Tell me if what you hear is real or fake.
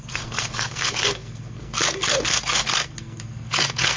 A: fake